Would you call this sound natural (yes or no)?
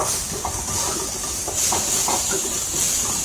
yes